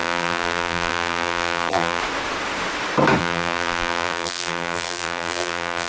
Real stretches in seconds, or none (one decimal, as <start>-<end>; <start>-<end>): 2.0-3.2